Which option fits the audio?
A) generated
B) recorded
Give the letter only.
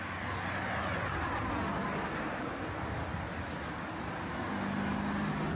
B